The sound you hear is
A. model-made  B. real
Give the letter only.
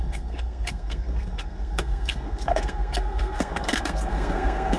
A